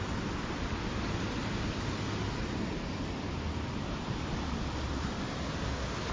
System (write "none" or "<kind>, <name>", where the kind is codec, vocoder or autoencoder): none